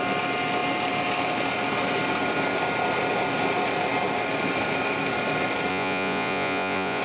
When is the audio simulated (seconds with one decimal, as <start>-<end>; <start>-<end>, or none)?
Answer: 5.7-7.0